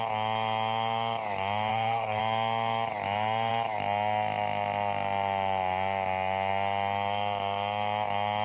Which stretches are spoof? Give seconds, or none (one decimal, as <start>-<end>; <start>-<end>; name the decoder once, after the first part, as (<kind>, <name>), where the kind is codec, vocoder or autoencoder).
1.7-2.2 (codec, SNAC)